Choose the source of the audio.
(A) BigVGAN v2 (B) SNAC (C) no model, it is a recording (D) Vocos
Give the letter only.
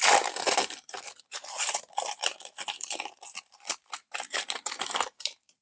A